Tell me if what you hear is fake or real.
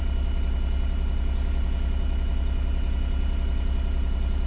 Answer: real